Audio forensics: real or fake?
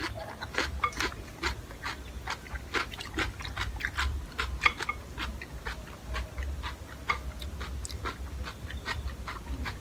real